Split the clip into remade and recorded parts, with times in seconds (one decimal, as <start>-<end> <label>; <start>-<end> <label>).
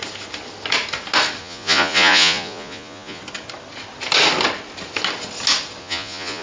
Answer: 0.0-1.4 recorded; 1.4-3.2 remade; 3.2-5.8 recorded; 5.8-6.4 remade